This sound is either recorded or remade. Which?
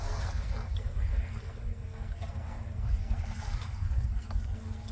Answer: remade